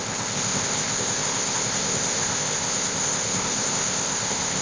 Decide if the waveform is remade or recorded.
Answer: remade